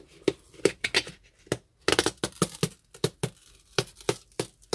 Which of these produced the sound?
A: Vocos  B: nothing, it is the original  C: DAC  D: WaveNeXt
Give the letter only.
B